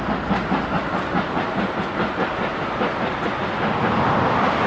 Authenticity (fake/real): real